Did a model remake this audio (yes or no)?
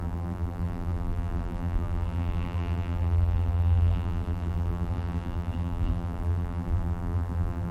yes